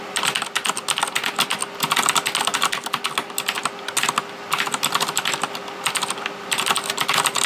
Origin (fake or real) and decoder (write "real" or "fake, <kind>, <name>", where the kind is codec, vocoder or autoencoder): real